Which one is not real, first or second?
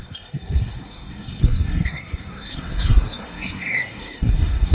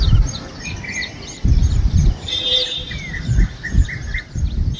first